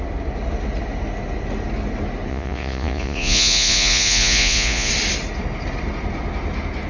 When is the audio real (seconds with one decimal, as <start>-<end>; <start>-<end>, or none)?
0.0-2.3; 4.9-6.9